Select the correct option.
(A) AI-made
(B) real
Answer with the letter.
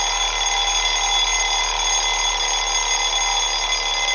B